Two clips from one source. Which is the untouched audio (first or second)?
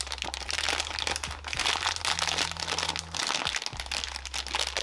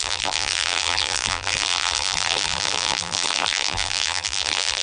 first